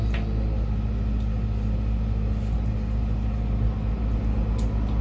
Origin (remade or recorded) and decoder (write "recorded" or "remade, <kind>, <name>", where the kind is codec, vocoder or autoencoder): recorded